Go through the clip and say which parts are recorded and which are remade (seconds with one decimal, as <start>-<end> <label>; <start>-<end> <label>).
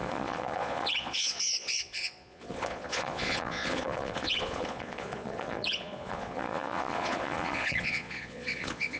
0.0-9.0 remade